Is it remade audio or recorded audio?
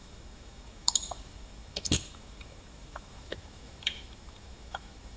remade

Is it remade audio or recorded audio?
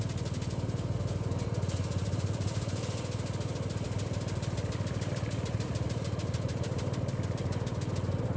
recorded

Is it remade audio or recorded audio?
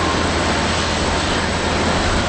recorded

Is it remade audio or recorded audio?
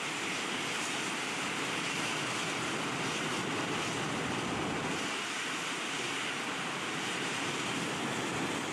recorded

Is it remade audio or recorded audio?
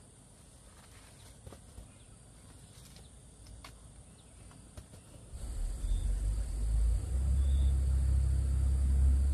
recorded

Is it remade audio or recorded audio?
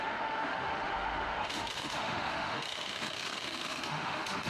remade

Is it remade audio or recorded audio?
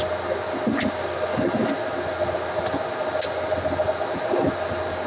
recorded